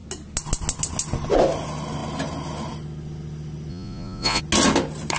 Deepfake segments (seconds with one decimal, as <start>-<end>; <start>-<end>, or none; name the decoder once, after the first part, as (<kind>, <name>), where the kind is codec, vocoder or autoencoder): 3.7-4.4 (vocoder, Vocos)